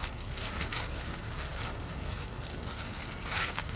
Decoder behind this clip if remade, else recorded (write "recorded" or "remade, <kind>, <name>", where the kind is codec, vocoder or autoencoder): remade, codec, SNAC